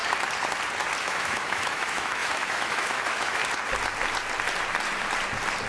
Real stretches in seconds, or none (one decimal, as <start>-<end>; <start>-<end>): 0.0-1.0; 3.4-5.7

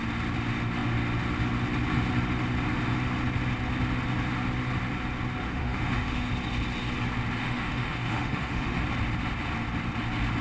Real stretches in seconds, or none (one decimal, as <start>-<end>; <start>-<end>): 0.0-5.4; 6.3-7.4; 8.8-10.4

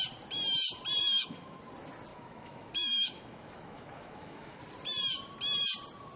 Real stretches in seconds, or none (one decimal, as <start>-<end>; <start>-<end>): 0.0-1.0; 1.6-2.1; 4.6-6.2

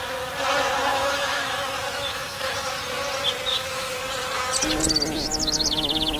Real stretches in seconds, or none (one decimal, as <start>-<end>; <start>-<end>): 0.0-0.9; 2.8-3.5; 4.0-6.2

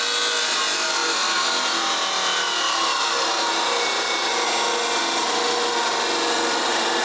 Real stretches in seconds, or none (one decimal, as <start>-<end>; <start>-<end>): 0.0-7.0